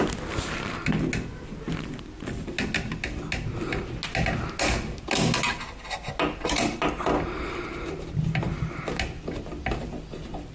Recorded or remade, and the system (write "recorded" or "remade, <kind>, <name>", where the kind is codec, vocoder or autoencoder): recorded